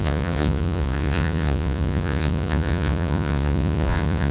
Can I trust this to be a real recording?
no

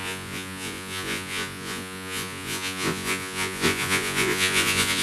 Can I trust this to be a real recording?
no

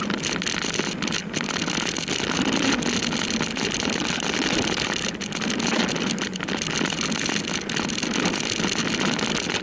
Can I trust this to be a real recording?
yes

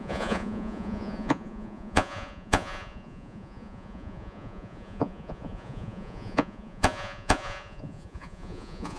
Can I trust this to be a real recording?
no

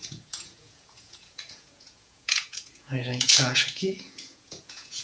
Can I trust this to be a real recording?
no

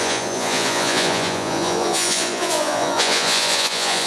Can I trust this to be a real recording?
no